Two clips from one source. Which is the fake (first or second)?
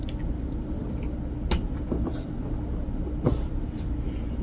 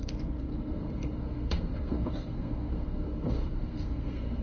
second